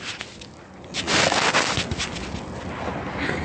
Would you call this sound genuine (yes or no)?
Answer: yes